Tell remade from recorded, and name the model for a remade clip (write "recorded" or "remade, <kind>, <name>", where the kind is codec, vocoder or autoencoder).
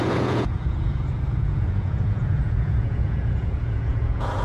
remade, vocoder, Vocos